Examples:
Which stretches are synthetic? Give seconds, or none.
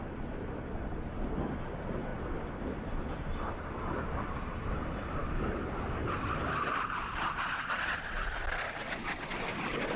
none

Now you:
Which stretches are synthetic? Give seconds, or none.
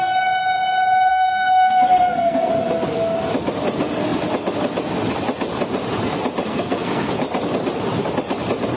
1.1-2.5 (codec, SNAC); 6.5-7.1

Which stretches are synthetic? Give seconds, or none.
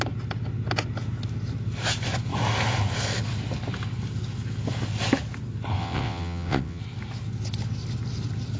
5.8-6.8 (vocoder, WaveNeXt)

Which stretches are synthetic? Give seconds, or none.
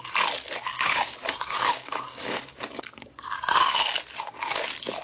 0.7-3.7 (codec, DAC)